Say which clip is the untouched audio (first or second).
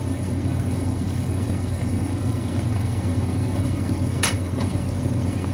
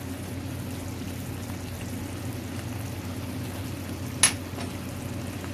second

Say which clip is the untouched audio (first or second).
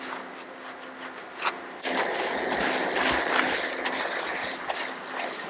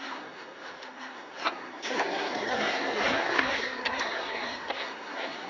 first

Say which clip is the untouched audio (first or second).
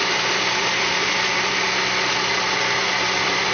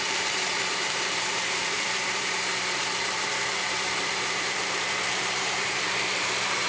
first